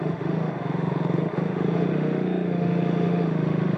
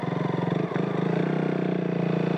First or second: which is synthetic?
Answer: first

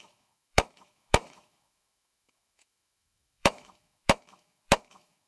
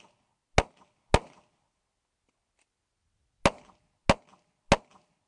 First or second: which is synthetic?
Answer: first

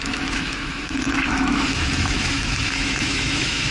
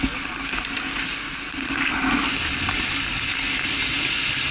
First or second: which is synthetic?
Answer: first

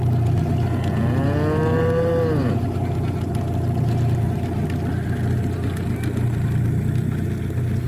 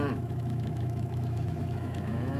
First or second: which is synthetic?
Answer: second